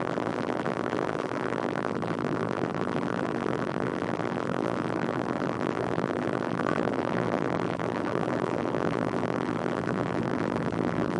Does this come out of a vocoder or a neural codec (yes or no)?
yes